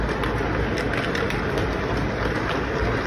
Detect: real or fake real